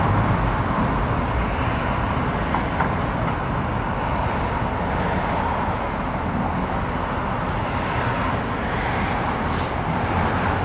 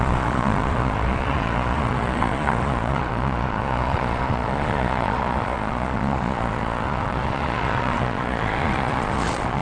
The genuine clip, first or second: first